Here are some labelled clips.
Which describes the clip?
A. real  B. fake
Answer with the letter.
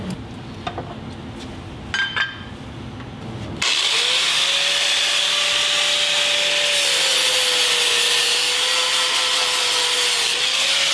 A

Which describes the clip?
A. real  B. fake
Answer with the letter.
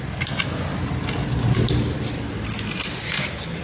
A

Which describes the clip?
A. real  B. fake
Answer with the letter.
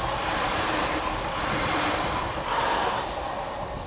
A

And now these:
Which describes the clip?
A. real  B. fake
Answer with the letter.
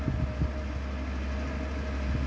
A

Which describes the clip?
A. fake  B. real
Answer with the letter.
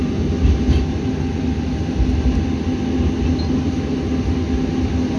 B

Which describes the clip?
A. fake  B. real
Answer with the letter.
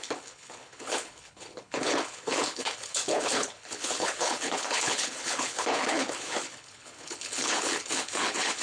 A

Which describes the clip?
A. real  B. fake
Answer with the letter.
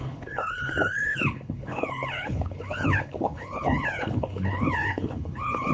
B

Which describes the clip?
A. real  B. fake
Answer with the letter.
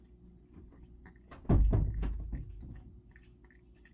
A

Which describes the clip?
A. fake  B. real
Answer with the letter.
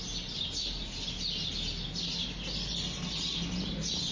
B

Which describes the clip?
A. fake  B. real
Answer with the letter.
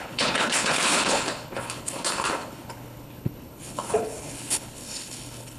A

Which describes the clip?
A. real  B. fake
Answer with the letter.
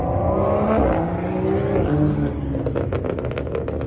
A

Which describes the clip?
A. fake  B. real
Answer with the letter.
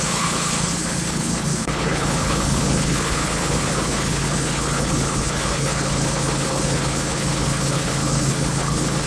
A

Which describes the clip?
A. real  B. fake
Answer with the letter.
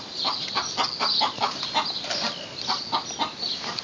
A